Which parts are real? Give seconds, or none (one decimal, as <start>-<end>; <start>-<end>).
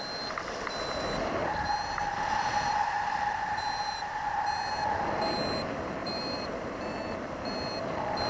0.0-6.0; 6.8-8.3